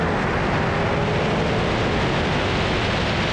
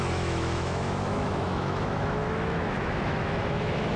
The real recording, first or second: first